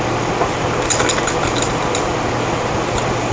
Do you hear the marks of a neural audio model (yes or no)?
no